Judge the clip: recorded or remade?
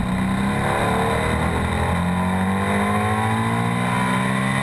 recorded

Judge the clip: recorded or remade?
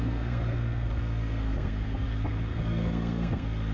remade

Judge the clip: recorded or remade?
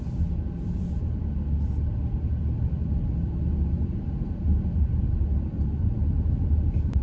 recorded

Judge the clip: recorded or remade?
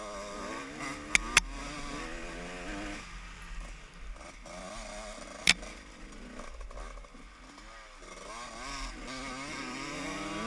recorded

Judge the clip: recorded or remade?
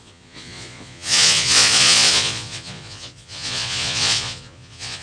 remade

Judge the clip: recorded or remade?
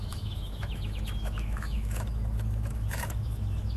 remade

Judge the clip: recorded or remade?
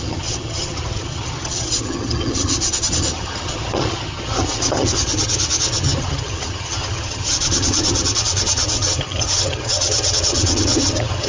remade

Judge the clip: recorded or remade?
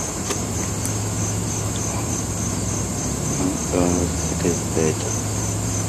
remade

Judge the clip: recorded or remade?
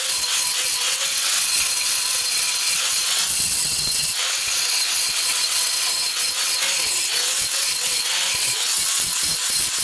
remade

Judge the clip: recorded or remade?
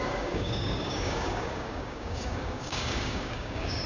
remade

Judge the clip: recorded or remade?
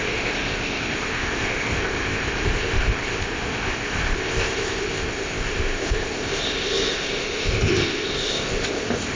remade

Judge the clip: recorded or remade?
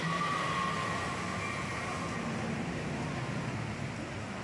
recorded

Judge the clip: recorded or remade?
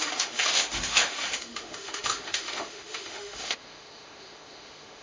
remade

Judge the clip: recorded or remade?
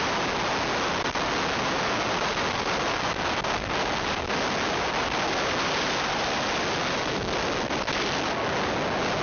recorded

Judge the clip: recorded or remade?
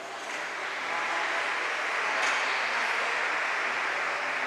recorded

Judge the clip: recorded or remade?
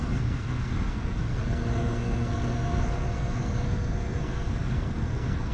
remade